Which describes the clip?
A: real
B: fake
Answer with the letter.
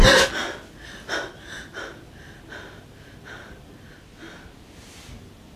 A